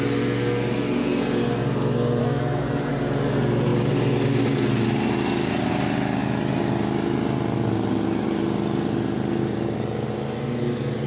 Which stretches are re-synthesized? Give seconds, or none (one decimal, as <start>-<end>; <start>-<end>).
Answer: 2.2-2.9

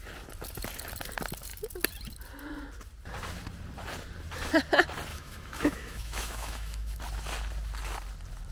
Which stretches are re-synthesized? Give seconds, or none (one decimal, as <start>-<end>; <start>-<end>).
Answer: 5.1-7.0

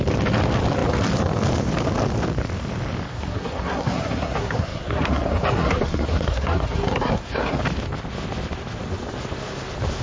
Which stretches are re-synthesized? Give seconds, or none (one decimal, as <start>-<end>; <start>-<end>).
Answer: 3.1-7.6